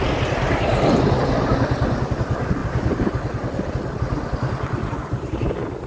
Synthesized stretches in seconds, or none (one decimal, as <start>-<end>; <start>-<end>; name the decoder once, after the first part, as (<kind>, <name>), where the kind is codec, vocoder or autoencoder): none